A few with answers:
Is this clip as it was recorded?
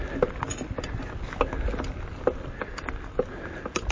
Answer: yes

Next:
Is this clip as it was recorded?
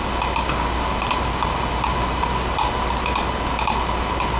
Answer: yes